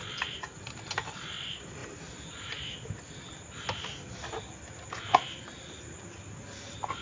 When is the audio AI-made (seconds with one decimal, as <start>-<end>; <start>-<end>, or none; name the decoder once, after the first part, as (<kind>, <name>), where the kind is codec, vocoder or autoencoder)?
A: none